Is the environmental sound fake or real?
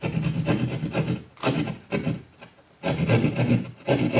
real